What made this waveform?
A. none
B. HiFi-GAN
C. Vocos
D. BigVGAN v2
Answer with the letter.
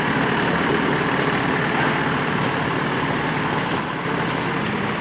D